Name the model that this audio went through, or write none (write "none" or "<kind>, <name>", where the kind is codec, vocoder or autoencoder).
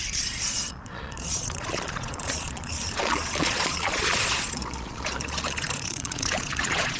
vocoder, Vocos